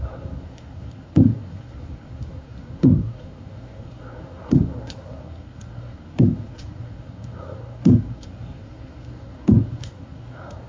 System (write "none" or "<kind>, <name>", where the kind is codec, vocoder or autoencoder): codec, SNAC